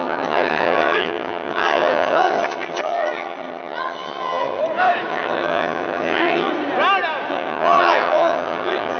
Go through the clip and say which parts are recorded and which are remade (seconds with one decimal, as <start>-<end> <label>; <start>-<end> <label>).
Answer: 0.0-4.6 remade; 4.6-5.1 recorded; 5.1-6.5 remade; 6.5-7.3 recorded; 7.3-9.0 remade